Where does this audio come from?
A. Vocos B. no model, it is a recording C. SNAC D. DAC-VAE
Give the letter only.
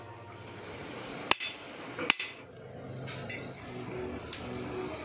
B